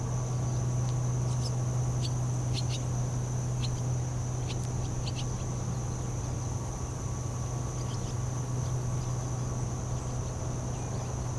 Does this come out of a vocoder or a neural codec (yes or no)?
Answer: no